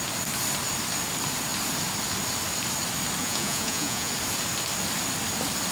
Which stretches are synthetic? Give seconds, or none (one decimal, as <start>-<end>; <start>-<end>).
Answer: 3.2-4.1